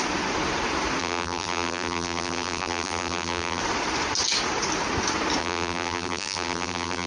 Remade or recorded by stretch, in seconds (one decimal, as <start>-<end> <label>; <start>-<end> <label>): 0.0-1.0 recorded; 1.0-3.6 remade; 3.6-5.4 recorded; 5.4-7.1 remade